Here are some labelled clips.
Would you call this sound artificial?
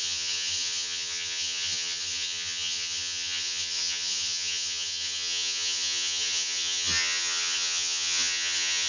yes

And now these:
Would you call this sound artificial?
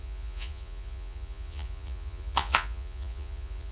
yes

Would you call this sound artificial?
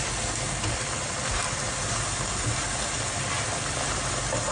no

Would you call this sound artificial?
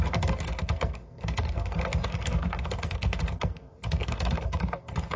yes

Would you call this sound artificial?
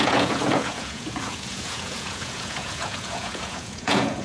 yes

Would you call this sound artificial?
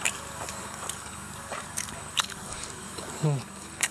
yes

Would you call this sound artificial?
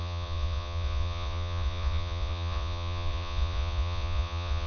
yes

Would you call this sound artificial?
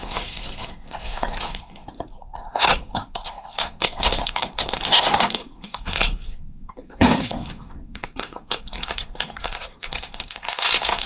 yes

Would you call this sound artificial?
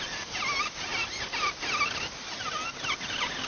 no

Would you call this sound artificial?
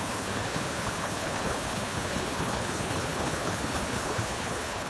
yes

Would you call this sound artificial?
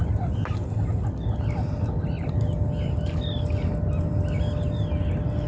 no